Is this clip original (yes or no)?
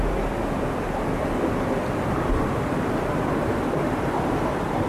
yes